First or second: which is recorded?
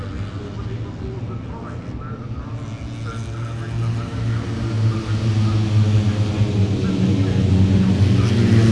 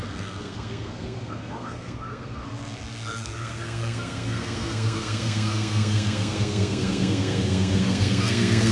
first